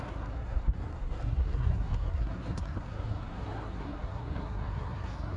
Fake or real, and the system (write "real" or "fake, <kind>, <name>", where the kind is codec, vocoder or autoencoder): fake, codec, SNAC